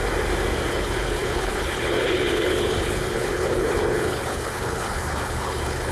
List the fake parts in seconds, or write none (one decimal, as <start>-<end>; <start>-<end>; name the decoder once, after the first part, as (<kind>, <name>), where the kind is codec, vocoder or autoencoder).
0.7-5.9 (codec, HILCodec)